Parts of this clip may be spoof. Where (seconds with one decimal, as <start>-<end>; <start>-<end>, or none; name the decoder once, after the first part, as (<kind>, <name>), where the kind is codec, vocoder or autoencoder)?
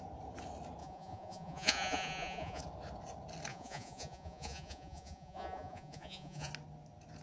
0.8-2.6 (vocoder, Vocos); 3.5-6.5